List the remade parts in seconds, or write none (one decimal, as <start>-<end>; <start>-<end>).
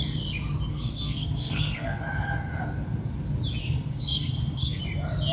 0.7-2.0; 3.6-4.8